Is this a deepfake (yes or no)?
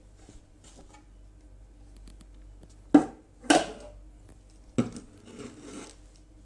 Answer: no